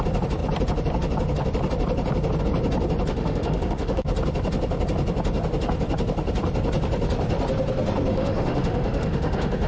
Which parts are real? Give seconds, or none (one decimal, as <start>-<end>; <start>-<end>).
0.0-3.1; 4.0-8.1